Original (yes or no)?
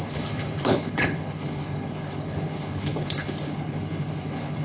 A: no